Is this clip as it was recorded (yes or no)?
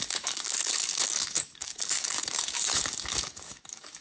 no